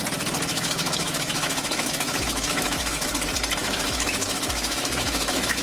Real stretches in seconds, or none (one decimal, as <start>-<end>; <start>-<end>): 0.0-0.5; 3.1-3.6